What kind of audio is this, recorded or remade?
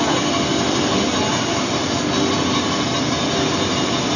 recorded